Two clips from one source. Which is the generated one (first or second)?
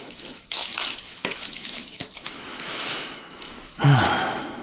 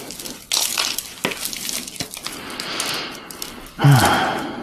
first